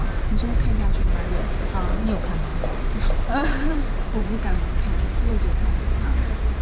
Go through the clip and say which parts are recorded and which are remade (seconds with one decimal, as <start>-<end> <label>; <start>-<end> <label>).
0.0-2.5 recorded; 2.5-6.6 remade